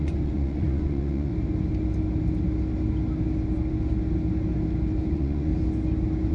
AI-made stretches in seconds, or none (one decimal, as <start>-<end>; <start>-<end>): 0.0-1.3; 5.1-5.5